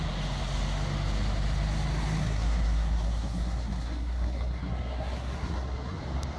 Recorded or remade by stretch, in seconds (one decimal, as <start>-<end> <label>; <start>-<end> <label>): 0.0-2.2 recorded; 2.2-6.0 remade; 6.0-6.4 recorded